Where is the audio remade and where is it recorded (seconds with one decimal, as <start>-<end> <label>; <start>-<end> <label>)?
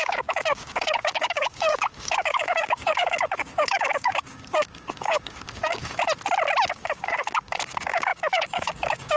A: 0.0-6.0 remade; 6.0-6.7 recorded; 6.7-9.2 remade